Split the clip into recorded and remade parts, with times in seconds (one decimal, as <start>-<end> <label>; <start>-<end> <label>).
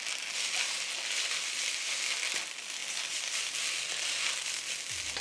0.0-5.2 recorded